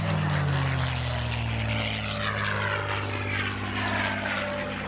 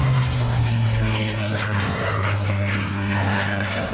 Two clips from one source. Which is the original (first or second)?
first